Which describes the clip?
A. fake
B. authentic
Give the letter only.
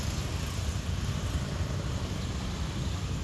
B